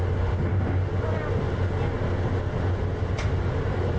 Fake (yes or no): no